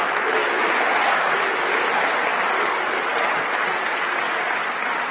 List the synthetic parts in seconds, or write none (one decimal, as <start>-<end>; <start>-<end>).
2.3-3.0

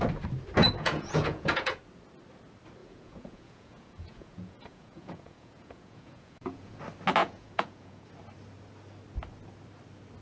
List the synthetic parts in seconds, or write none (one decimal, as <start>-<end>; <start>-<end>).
0.6-1.8; 2.8-6.8; 7.2-8.1

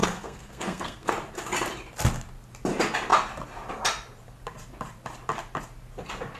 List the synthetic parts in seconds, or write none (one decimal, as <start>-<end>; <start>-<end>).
0.0-1.1

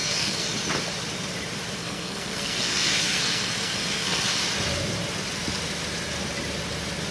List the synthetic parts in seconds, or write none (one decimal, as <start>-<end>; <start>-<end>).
0.0-0.5; 1.8-4.4